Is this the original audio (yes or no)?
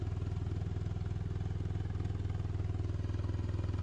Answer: yes